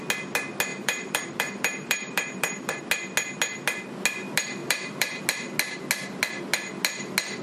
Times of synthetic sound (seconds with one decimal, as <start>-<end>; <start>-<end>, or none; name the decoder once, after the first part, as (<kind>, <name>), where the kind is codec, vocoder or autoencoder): 0.7-2.8 (vocoder, BigVGAN v2); 4.6-5.2